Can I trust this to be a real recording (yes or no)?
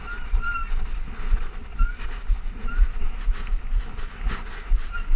yes